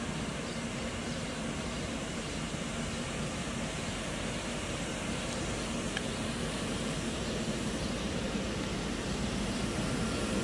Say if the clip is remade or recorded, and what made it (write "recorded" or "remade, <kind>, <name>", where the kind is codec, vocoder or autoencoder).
remade, vocoder, BigVGAN v2